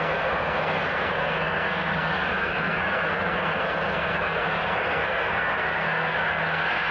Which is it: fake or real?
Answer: fake